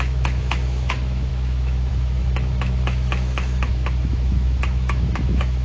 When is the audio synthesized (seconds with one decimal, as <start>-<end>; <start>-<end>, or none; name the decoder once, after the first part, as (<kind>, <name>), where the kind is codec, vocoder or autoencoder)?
0.0-5.6 (autoencoder, DAC-VAE)